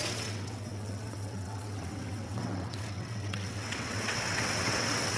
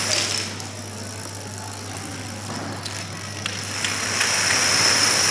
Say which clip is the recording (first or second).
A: second